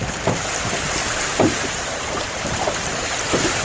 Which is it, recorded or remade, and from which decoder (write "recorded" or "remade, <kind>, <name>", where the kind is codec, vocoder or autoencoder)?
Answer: remade, vocoder, BigVGAN v2